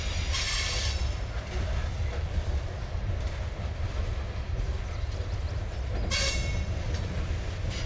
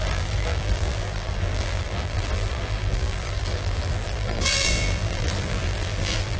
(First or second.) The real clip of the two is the first